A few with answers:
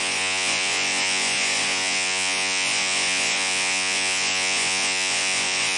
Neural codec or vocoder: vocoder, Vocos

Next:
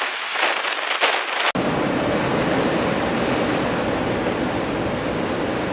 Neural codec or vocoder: none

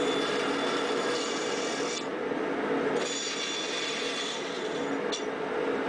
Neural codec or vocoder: none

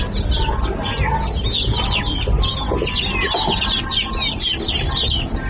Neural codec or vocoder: none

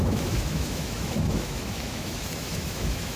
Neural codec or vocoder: autoencoder, DAC-VAE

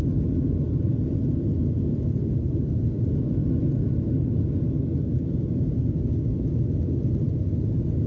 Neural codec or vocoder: none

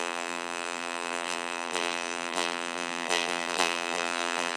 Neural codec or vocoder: vocoder, BigVGAN v2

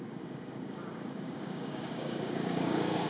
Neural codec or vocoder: codec, DAC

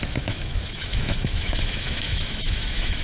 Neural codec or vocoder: autoencoder, DAC-VAE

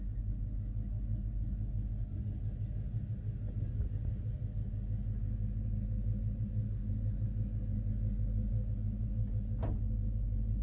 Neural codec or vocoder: none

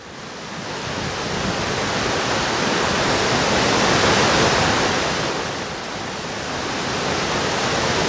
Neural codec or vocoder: none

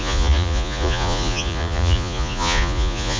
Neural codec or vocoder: vocoder, Vocos